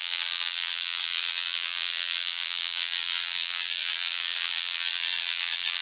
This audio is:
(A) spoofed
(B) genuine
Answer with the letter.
A